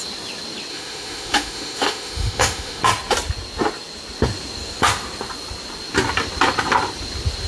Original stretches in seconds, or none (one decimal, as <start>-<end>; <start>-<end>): 0.0-0.7; 2.8-7.5